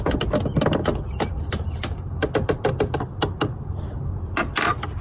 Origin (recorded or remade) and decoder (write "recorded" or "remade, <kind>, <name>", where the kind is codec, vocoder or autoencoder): recorded